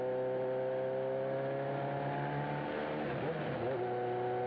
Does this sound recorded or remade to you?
recorded